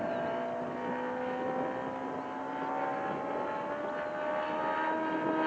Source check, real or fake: real